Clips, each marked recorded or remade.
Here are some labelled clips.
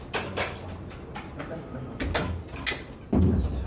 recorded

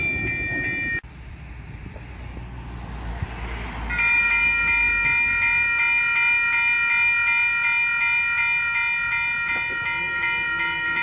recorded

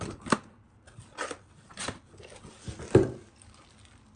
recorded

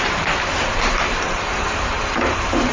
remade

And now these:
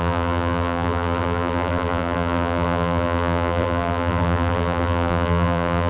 remade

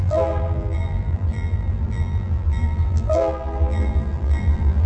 remade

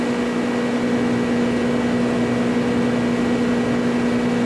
recorded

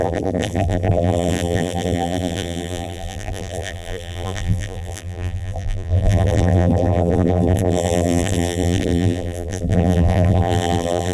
remade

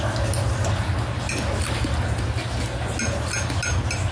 recorded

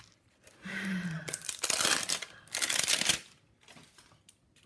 remade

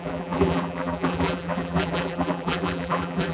remade